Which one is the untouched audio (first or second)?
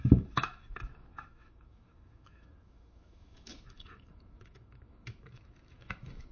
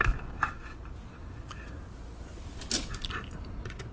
second